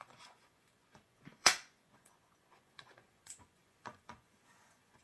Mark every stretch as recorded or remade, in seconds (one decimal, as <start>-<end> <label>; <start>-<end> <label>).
0.0-5.0 remade